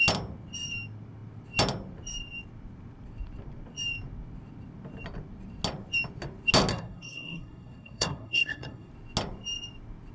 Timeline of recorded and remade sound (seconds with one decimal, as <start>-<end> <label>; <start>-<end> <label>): 0.0-6.7 recorded; 6.7-8.9 remade; 8.9-10.1 recorded